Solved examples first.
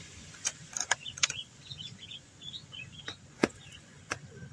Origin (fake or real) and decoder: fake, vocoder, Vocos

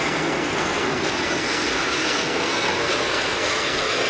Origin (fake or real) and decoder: fake, codec, SNAC